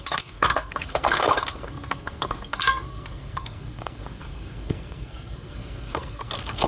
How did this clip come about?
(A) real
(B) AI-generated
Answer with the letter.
B